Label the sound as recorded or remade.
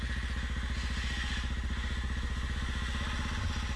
recorded